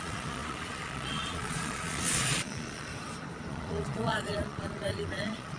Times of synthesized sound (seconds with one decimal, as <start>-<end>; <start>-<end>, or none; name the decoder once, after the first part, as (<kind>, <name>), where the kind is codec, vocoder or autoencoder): 0.0-2.9 (vocoder, Vocos); 3.5-5.6